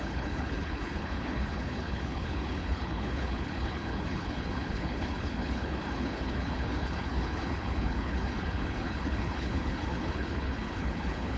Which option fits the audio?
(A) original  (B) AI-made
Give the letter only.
B